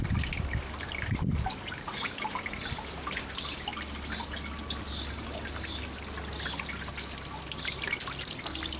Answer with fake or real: real